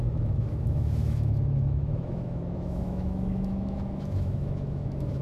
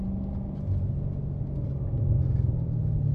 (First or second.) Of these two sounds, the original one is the second